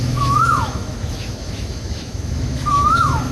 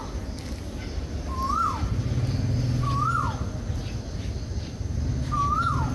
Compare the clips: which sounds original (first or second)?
second